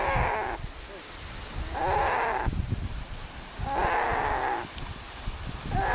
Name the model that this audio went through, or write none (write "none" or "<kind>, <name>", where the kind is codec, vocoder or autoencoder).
none